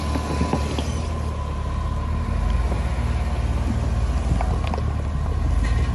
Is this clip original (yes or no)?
yes